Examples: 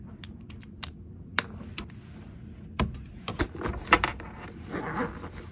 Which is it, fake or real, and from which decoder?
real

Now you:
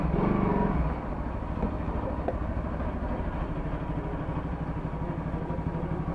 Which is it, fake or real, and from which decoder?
real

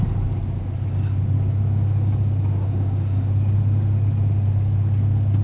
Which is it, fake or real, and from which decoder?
real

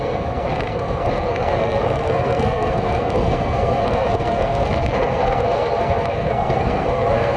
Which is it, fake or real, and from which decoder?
fake, codec, SNAC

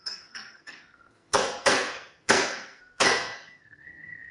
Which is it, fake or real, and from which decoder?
fake, codec, SNAC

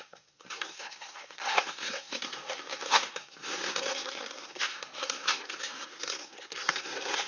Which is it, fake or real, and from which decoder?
fake, codec, SNAC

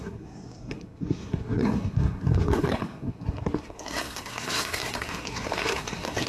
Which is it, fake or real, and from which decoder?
fake, codec, SNAC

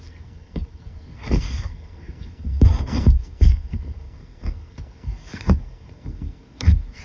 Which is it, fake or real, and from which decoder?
fake, codec, SNAC